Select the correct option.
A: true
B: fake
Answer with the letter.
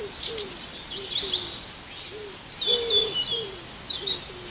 A